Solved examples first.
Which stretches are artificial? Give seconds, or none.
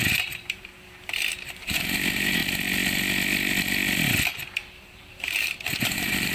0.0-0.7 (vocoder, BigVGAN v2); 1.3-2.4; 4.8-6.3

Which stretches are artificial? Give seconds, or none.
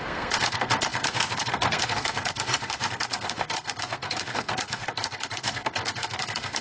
0.0-6.6 (codec, SNAC)